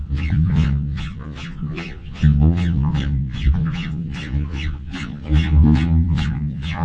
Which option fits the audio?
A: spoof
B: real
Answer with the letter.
A